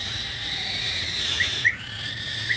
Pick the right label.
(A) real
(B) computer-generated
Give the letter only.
B